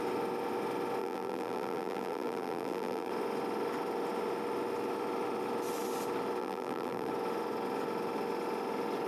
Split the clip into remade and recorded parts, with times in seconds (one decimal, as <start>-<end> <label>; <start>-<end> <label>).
0.0-1.0 recorded; 1.0-3.1 remade; 3.1-6.4 recorded; 6.4-7.1 remade; 7.1-9.1 recorded